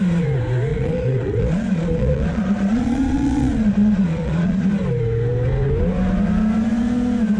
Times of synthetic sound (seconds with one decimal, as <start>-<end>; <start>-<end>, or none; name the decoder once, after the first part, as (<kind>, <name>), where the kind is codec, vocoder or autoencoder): 0.7-4.7 (vocoder, Vocos)